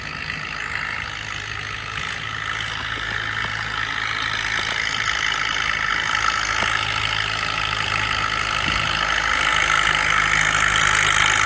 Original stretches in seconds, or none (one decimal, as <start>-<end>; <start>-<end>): 0.0-11.5